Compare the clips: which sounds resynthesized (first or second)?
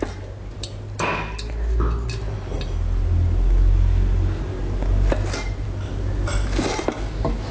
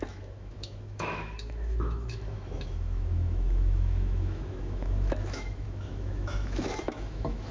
second